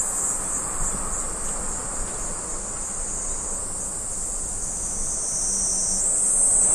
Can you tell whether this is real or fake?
real